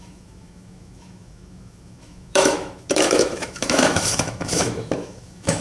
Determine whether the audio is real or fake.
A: fake